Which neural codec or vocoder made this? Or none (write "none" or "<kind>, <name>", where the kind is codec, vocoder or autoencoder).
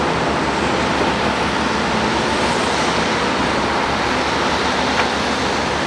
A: none